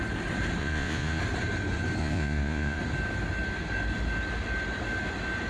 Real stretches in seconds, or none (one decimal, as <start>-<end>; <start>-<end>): 0.0-0.6; 1.2-2.0; 2.8-5.5